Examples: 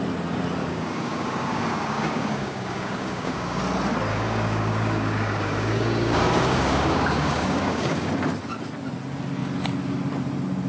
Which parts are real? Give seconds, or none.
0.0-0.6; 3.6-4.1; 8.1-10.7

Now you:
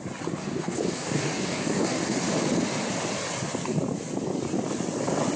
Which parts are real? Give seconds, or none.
0.0-0.4; 2.0-5.4

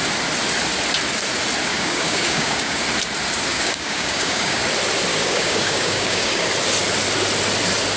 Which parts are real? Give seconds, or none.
0.0-1.7; 2.8-3.5; 4.6-5.1; 6.5-8.0